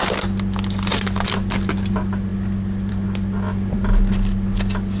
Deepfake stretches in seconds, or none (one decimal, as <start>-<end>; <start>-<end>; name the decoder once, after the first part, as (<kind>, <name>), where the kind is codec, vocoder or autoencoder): none

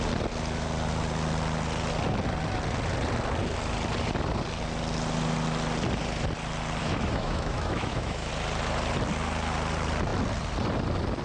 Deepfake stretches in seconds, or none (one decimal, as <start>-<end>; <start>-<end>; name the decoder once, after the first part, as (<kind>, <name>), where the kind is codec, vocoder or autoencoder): 6.8-8.3 (autoencoder, DAC-VAE)

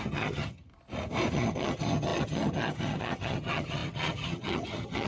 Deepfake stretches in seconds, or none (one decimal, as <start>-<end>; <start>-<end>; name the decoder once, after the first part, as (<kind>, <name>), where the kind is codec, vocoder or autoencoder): 0.0-0.7 (vocoder, HiFi-GAN); 1.3-5.1

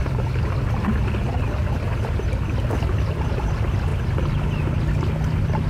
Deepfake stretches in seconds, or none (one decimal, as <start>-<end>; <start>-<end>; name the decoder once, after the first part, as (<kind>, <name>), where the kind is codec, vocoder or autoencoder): none

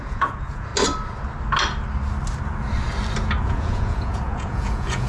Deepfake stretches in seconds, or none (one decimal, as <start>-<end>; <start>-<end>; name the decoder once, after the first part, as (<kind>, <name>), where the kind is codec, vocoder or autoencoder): 0.0-0.7 (vocoder, Vocos); 3.4-5.1

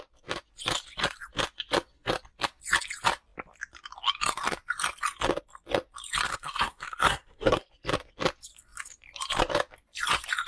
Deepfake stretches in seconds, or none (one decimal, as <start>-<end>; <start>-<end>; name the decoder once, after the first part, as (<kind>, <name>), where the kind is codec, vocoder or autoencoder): 6.3-7.7 (codec, SNAC)